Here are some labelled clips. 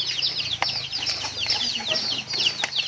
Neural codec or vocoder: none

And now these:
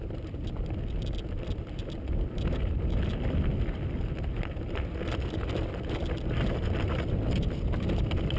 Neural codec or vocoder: none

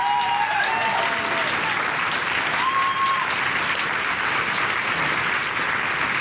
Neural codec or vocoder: none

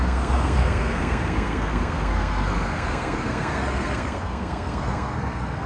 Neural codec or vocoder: codec, SNAC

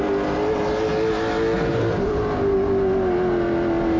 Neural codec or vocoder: none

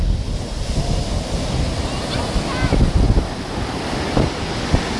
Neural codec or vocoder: none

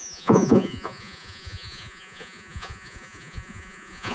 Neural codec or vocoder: vocoder, Vocos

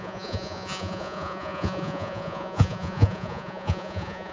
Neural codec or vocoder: vocoder, Vocos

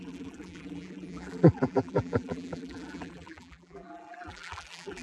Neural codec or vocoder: vocoder, BigVGAN v2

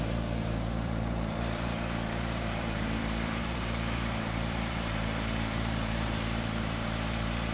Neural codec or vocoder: vocoder, BigVGAN v2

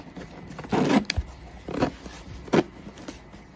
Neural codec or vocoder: none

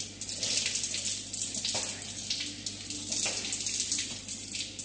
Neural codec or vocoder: none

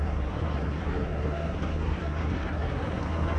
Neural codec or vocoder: codec, SNAC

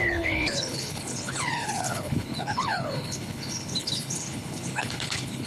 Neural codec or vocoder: codec, HILCodec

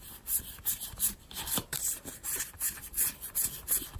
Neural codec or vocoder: vocoder, BigVGAN v2